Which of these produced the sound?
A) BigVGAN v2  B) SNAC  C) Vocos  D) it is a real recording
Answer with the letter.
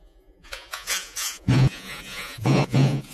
C